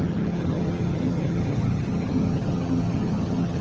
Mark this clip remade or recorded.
remade